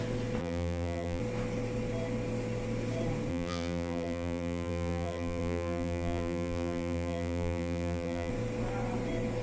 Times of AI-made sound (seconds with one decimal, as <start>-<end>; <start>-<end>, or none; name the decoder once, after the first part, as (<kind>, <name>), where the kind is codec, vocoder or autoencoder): 0.4-1.2 (vocoder, BigVGAN v2); 3.3-8.3